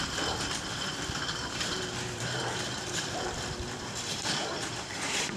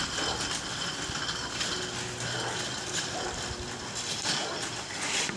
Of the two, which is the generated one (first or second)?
first